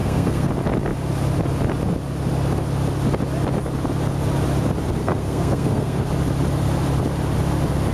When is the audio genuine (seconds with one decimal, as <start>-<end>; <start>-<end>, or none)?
0.5-5.0; 6.1-7.9